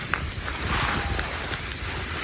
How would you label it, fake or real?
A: real